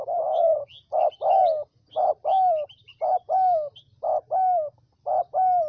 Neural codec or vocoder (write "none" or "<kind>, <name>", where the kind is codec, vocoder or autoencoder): none